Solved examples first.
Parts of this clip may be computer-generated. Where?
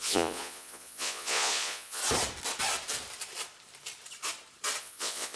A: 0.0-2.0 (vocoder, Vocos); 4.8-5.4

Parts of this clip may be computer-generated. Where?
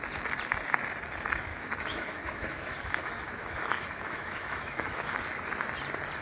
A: 1.5-5.2 (autoencoder, DAC-VAE)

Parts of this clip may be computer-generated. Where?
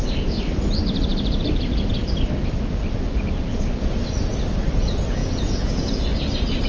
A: 5.2-5.9 (vocoder, Vocos)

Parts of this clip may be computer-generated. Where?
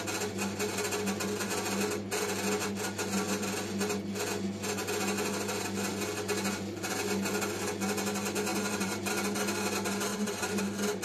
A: 8.5-9.1 (vocoder, BigVGAN v2); 10.1-10.6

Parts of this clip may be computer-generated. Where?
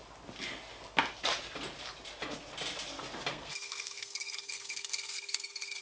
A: 3.3-5.8 (codec, SNAC)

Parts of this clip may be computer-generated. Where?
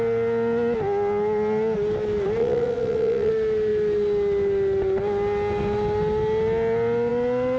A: 2.4-3.3 (vocoder, WaveNeXt)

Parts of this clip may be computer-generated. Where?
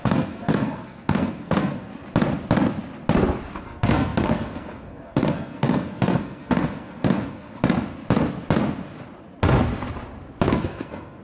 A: 0.0-1.9 (codec, SNAC); 3.6-7.6; 10.5-11.2